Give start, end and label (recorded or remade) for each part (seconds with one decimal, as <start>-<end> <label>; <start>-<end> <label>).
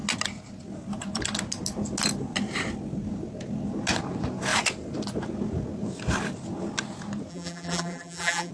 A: 0.0-7.3 recorded; 7.3-8.5 remade